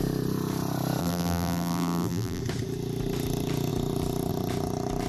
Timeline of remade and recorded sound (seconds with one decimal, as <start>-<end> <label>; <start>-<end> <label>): 0.0-1.0 recorded; 1.0-2.4 remade; 2.4-5.1 recorded